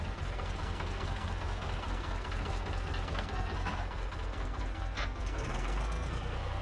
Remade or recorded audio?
remade